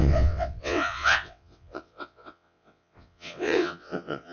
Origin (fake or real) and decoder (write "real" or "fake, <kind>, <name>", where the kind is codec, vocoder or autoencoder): fake, vocoder, WaveNeXt